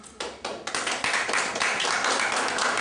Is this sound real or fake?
real